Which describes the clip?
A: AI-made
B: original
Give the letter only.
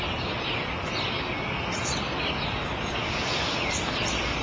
B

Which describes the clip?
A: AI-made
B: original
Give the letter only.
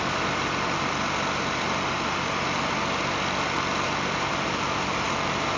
B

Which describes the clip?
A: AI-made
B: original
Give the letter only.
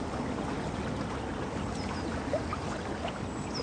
B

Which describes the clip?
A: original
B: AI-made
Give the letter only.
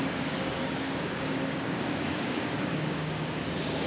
B